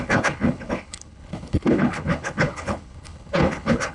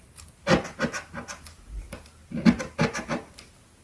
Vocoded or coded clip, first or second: first